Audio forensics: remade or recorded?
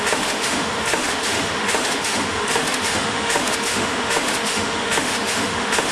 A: remade